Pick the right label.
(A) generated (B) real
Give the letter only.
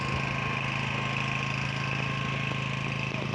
B